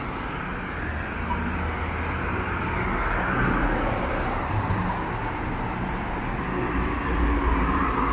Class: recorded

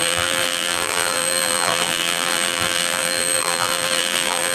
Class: remade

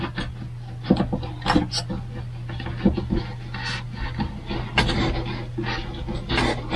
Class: recorded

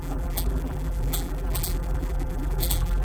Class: remade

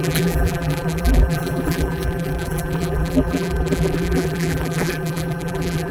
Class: remade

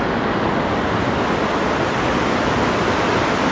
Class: recorded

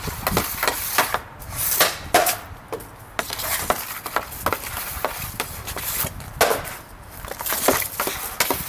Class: recorded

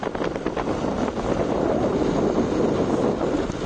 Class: recorded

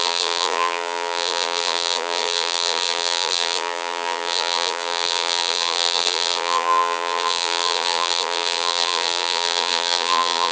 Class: remade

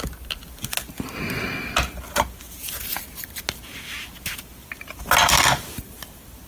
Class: recorded